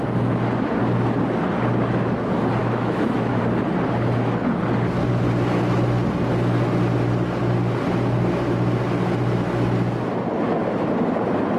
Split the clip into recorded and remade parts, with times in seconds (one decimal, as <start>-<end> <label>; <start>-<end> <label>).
0.0-2.6 recorded; 2.6-3.4 remade; 3.4-11.6 recorded